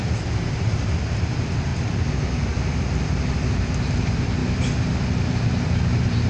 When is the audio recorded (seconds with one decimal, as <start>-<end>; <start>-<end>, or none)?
1.7-3.5; 4.4-5.3